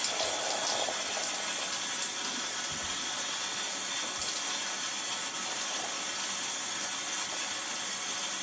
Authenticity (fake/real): real